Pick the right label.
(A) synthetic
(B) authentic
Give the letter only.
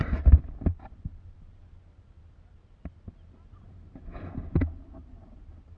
B